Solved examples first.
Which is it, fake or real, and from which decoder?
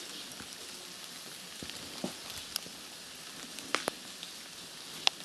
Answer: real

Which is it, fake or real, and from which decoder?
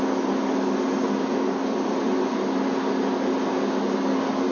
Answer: real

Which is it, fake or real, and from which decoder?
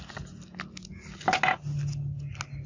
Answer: real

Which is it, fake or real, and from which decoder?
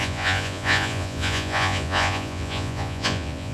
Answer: fake, vocoder, Vocos